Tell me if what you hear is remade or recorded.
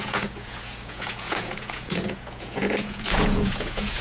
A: remade